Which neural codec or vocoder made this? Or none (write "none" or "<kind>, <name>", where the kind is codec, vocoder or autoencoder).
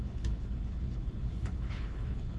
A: codec, HILCodec